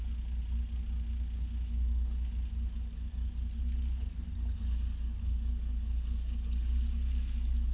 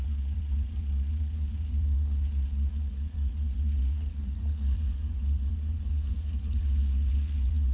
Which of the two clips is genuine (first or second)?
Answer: first